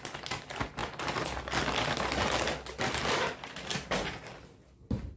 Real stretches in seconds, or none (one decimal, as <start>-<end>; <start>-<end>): 0.0-5.2